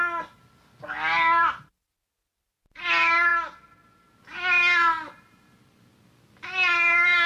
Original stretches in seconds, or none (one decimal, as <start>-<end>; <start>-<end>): 0.0-7.3